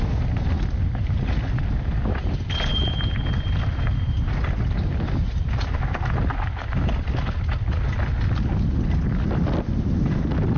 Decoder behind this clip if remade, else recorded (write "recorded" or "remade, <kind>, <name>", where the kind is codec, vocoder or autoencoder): recorded